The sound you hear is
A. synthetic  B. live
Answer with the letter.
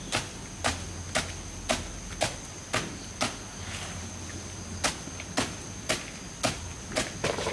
B